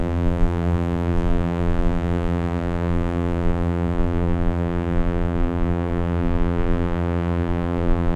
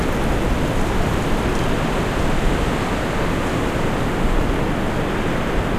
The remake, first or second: first